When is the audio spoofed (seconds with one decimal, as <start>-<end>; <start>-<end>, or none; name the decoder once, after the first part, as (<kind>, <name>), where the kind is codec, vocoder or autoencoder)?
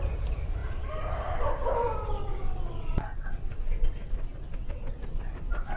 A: 2.2-3.3 (vocoder, WaveNeXt)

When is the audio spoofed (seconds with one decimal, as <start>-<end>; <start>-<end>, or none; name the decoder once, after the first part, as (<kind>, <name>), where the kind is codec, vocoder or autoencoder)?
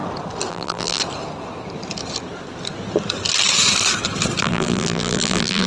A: 0.5-1.0 (vocoder, BigVGAN v2); 4.4-5.7